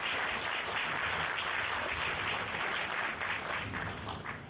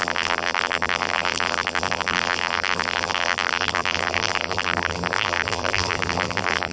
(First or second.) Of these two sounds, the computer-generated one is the second